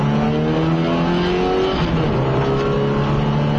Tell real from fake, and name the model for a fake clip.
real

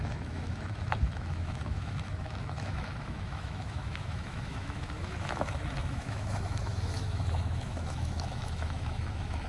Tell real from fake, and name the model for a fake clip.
fake, autoencoder, DAC-VAE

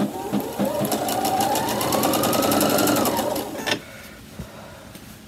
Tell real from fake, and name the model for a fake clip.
real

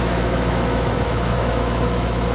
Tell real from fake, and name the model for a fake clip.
fake, autoencoder, DAC-VAE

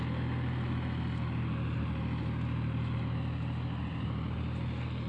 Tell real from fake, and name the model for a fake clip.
real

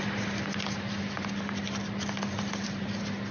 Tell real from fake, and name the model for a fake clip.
real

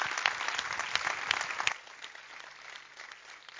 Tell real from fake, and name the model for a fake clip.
real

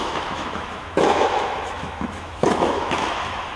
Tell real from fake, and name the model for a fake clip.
fake, autoencoder, DAC-VAE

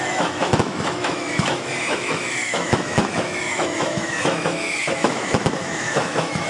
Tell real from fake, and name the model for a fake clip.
fake, autoencoder, DAC-VAE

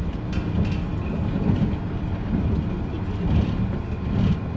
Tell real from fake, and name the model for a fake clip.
real